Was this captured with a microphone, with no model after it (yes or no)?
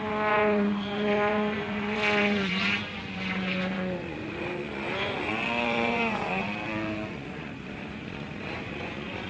no